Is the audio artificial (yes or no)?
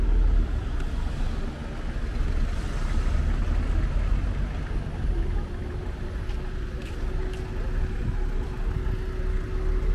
no